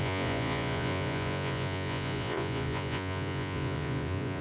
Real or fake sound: fake